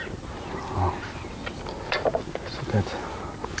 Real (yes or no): yes